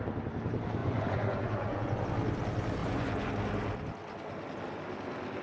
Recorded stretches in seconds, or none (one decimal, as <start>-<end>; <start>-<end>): 0.0-0.8; 2.0-2.8; 3.3-5.4